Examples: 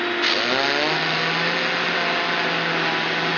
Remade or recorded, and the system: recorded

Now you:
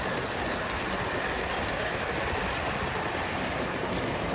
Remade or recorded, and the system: recorded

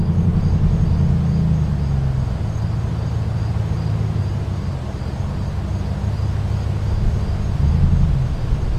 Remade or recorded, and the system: recorded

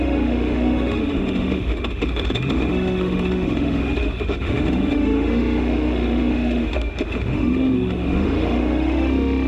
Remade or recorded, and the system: remade, autoencoder, DAC-VAE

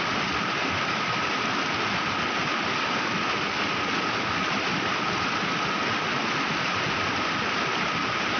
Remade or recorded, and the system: recorded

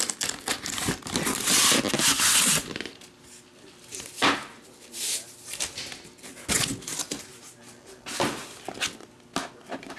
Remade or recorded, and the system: recorded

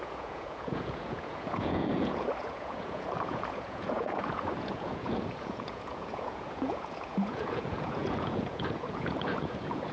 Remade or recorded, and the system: remade, vocoder, Vocos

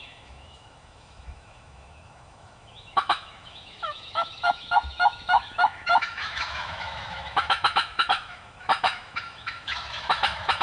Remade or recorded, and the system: remade, autoencoder, DAC-VAE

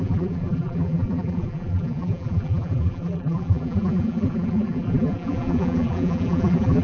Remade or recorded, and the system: remade, vocoder, BigVGAN v2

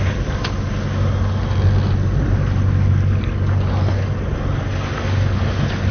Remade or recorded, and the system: recorded